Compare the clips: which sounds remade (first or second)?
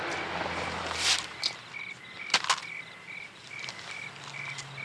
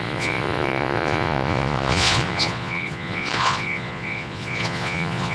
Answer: second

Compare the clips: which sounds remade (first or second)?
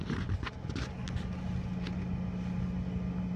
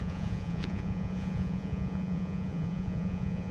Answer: second